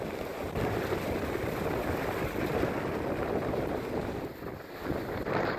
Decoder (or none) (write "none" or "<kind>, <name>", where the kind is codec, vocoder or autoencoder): none